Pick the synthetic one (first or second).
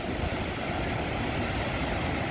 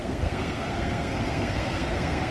second